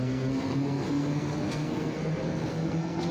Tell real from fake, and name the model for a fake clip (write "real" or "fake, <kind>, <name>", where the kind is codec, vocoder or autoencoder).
fake, codec, SNAC